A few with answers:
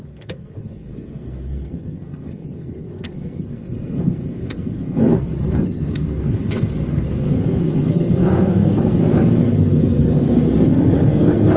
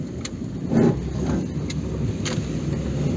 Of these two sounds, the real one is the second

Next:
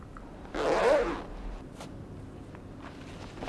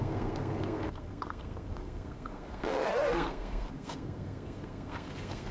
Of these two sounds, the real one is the first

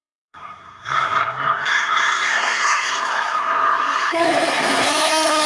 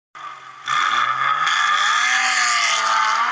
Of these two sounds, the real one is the second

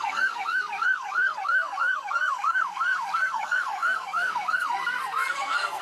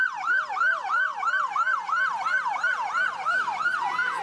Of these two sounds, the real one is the second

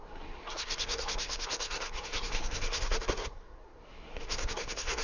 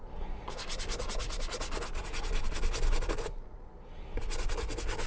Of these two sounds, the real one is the second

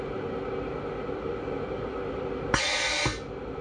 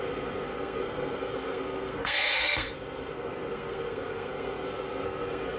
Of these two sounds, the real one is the first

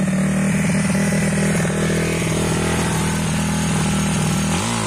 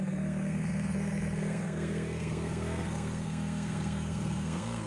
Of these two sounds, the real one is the first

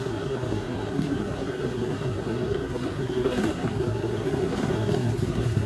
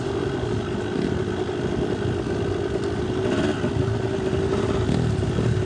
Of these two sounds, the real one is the second